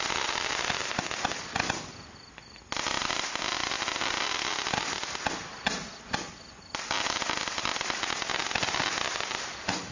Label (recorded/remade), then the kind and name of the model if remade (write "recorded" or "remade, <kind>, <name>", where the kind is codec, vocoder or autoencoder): recorded